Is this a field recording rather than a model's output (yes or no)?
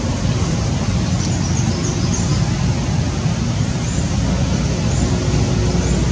yes